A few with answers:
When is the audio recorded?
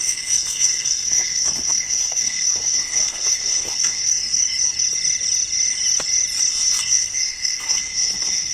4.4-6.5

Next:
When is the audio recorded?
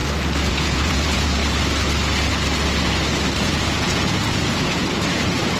0.0-0.5; 1.4-3.4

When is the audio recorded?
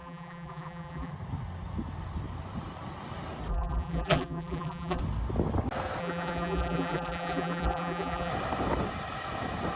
1.1-3.5; 5.0-6.0; 8.3-9.8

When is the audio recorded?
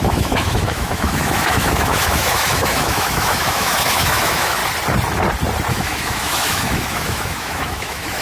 4.6-5.7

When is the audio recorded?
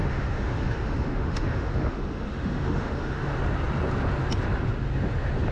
3.3-5.5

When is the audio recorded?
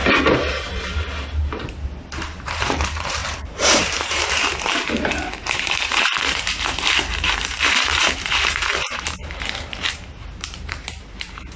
0.0-2.2